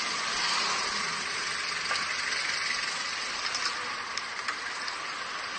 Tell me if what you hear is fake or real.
real